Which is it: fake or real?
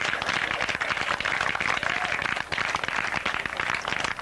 real